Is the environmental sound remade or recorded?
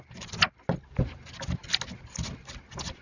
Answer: recorded